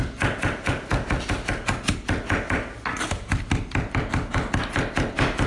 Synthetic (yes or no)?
no